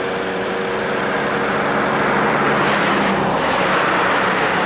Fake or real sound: real